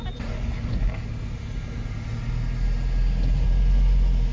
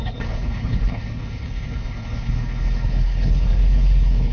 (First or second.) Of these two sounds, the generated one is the second